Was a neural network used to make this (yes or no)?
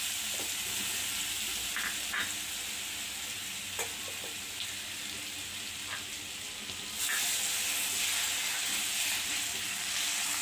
no